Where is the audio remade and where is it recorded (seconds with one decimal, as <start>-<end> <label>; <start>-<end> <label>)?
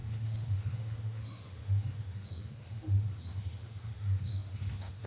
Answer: 0.0-5.1 remade